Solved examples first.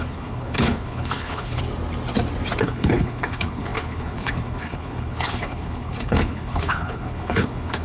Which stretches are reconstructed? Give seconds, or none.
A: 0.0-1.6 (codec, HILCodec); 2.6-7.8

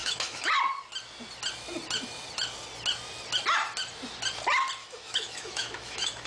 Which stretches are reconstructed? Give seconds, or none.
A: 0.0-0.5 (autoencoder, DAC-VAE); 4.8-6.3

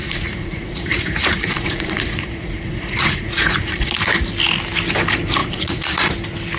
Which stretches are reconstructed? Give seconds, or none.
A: 0.0-4.0 (vocoder, Vocos); 5.4-6.1

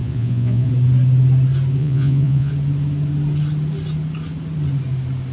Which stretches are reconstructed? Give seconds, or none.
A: 0.0-0.7 (vocoder, Vocos); 1.8-2.5

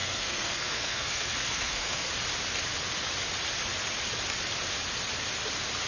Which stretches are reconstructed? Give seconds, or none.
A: 0.0-2.1 (codec, SNAC)

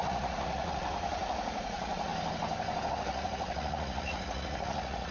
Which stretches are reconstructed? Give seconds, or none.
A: 0.0-2.1 (vocoder, Vocos); 2.9-5.1

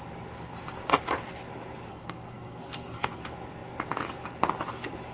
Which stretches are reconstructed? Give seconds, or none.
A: 1.9-3.2 (codec, SNAC)

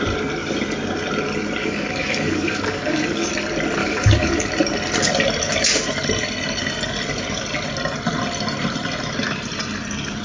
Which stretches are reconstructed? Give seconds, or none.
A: 1.6-3.3 (codec, DAC); 3.8-4.5